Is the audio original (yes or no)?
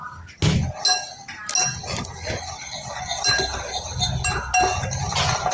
yes